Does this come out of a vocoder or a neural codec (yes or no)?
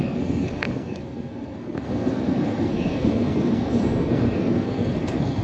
yes